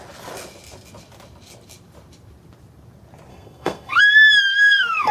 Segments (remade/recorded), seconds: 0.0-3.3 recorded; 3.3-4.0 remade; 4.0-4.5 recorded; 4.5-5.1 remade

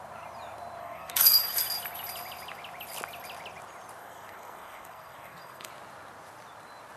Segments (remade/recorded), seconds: 0.0-0.8 recorded; 0.8-1.4 remade; 1.4-4.0 recorded; 4.0-5.7 remade; 5.7-7.0 recorded

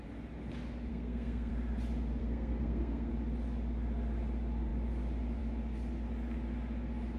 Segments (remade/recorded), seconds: 0.0-0.9 recorded; 0.9-1.5 remade; 1.5-2.2 recorded; 2.2-3.1 remade; 3.1-7.2 recorded

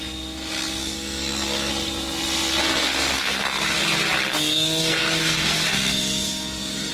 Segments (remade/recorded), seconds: 0.0-0.8 recorded; 0.8-1.7 remade; 1.7-2.6 recorded; 2.6-3.8 remade; 3.8-4.3 recorded; 4.3-6.9 remade

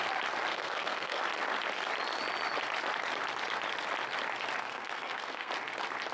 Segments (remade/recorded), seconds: 0.0-0.5 recorded; 0.5-1.2 remade; 1.2-4.6 recorded; 4.6-5.5 remade; 5.5-6.1 recorded

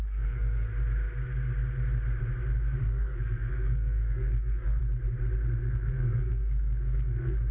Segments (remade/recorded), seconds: 0.0-0.7 remade; 0.7-2.8 recorded; 2.8-4.8 remade; 4.8-5.6 recorded; 5.6-7.5 remade

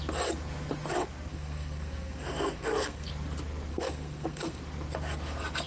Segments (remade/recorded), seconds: 0.0-1.3 recorded; 1.3-3.1 remade; 3.1-3.7 recorded; 3.7-4.6 remade; 4.6-5.7 recorded